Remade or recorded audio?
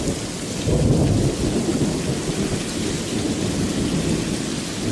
recorded